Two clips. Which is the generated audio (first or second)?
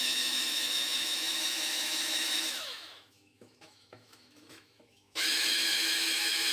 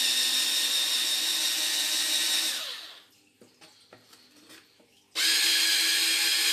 first